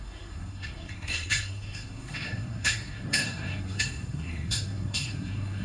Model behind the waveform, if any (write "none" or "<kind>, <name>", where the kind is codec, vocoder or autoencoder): codec, SNAC